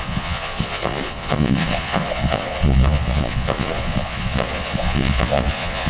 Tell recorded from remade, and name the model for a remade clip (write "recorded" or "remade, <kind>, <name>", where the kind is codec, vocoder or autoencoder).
remade, vocoder, Vocos